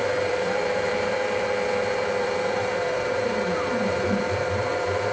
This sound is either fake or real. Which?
fake